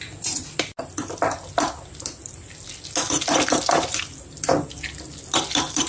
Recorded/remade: recorded